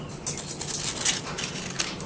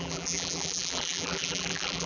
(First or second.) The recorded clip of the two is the first